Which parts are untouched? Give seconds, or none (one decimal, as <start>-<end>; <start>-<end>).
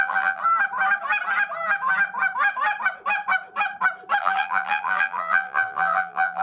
0.4-4.2